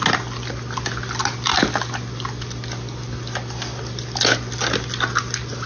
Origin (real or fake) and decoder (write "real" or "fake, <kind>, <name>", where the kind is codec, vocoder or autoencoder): real